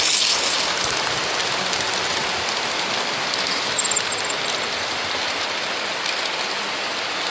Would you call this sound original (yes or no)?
yes